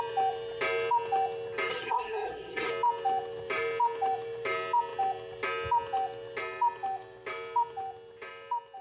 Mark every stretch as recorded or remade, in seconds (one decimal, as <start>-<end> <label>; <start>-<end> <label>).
0.0-1.7 recorded; 1.7-2.7 remade; 2.7-8.8 recorded